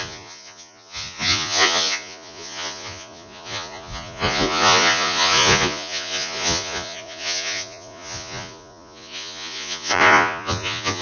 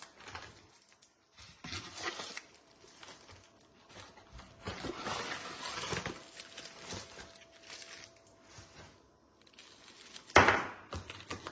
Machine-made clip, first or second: first